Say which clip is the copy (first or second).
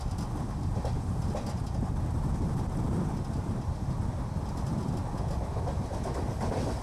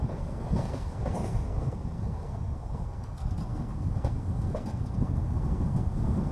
second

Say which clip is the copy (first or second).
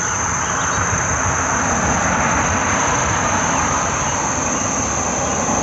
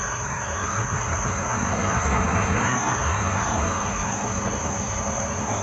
second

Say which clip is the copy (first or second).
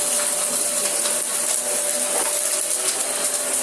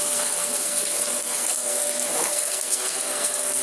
second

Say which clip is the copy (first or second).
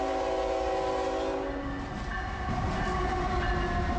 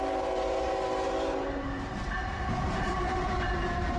second